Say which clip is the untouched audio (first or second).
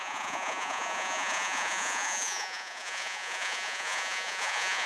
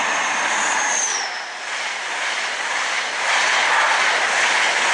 second